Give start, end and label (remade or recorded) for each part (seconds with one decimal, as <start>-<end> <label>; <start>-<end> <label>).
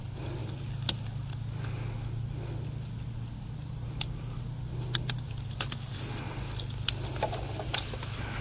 0.0-8.4 recorded